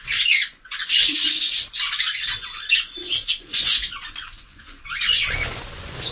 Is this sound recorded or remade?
remade